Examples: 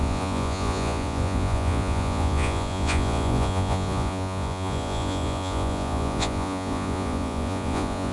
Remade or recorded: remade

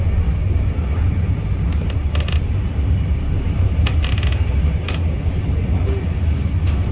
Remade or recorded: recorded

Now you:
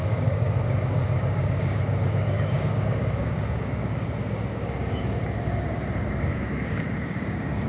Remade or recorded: remade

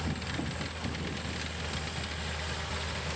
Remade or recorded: recorded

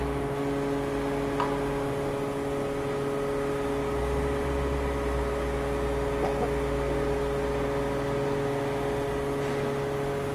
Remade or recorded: recorded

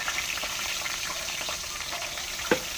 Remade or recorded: remade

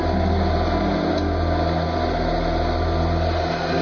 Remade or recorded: recorded